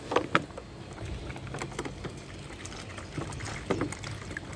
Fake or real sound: real